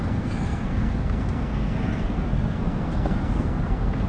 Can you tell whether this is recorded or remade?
remade